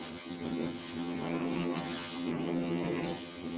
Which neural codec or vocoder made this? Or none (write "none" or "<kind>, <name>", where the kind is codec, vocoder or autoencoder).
vocoder, HiFi-GAN